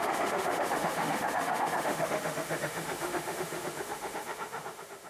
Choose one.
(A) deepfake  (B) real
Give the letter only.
A